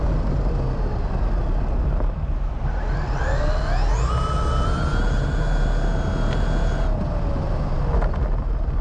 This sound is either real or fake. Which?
real